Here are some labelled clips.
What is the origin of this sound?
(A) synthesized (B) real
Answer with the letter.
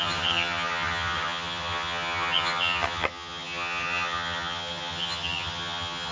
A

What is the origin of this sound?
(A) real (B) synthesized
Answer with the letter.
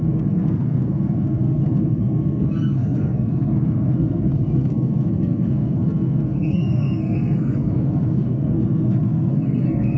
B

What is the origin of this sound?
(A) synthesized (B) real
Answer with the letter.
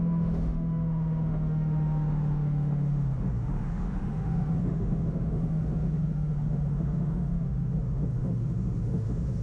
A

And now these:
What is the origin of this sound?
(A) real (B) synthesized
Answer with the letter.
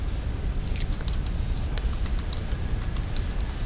A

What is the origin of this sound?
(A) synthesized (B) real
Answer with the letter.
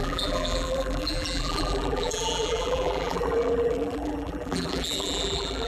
A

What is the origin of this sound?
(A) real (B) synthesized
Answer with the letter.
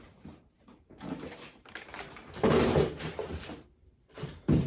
B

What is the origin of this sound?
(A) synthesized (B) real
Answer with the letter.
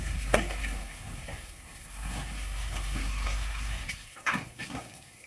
A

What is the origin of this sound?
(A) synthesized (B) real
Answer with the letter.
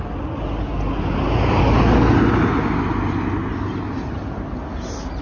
B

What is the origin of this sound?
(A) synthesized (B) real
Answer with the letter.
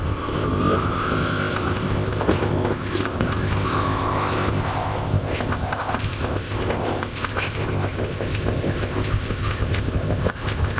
A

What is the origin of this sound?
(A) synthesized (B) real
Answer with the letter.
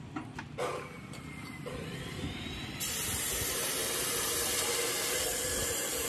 B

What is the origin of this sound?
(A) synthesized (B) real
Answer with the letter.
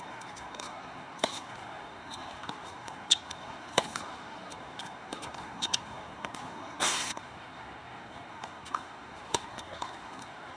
A